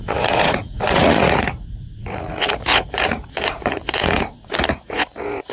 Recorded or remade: remade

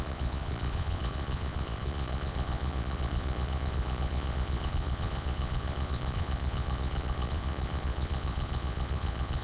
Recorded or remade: remade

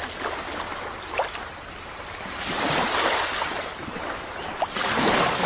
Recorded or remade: recorded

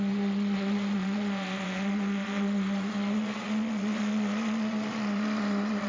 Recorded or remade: remade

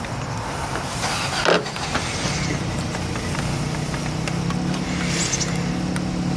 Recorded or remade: recorded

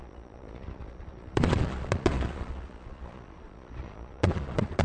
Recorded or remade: remade